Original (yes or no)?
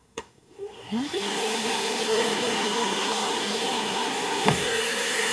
no